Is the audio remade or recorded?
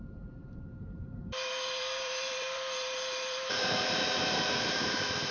remade